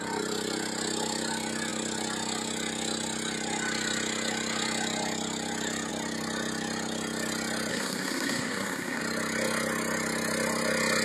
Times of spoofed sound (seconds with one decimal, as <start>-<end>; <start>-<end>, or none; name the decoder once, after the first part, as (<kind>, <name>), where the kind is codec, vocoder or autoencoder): 7.7-9.0 (codec, SNAC)